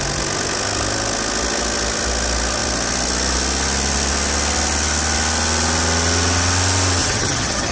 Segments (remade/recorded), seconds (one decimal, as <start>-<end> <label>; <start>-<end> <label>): 0.0-7.0 recorded; 7.0-7.7 remade